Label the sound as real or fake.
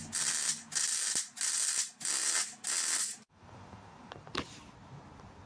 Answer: real